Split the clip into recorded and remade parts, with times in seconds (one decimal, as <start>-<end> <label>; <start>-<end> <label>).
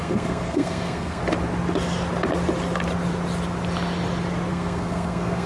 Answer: 0.0-1.2 remade; 1.2-4.5 recorded; 4.5-5.5 remade